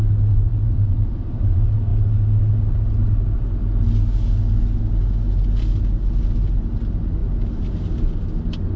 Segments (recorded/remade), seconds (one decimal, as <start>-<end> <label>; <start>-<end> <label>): 0.0-0.5 recorded; 0.5-1.4 remade; 1.4-8.8 recorded

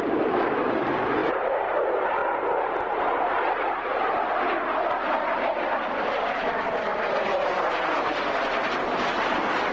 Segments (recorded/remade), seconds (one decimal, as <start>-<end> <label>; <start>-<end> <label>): 0.0-2.2 remade; 2.2-5.9 recorded; 5.9-9.7 remade

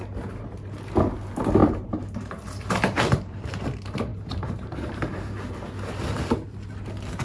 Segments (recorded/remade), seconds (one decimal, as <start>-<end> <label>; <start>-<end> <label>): 0.0-1.6 recorded; 1.6-3.4 remade; 3.4-4.1 recorded; 4.1-5.7 remade; 5.7-7.2 recorded

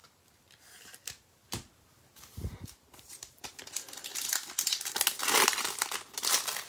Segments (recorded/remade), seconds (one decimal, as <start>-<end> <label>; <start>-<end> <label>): 0.0-3.6 remade; 3.6-6.7 recorded

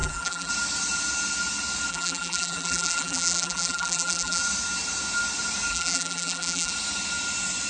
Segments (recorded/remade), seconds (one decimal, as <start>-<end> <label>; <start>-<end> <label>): 0.0-0.5 remade; 0.5-1.9 recorded; 1.9-4.4 remade; 4.4-5.7 recorded; 5.7-6.7 remade; 6.7-7.7 recorded

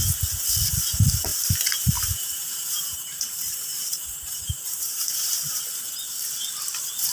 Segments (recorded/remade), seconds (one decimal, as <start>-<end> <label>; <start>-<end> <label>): 0.0-1.3 recorded; 1.3-5.6 remade; 5.6-7.1 recorded

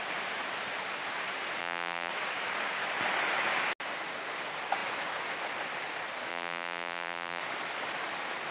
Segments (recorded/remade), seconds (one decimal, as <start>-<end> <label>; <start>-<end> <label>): 0.0-1.6 recorded; 1.6-2.1 remade; 2.1-6.3 recorded; 6.3-7.4 remade; 7.4-8.5 recorded

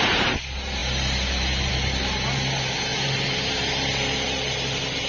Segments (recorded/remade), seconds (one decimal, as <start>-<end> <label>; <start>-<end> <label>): 0.0-5.1 remade